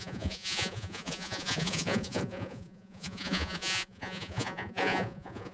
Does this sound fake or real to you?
fake